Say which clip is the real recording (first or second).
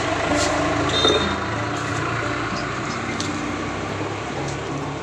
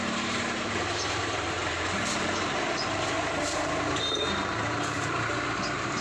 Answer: first